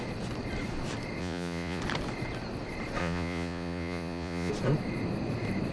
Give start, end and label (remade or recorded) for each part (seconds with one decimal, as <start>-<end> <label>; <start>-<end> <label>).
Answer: 0.0-1.2 recorded; 1.2-1.8 remade; 1.8-3.0 recorded; 3.0-4.5 remade; 4.5-5.7 recorded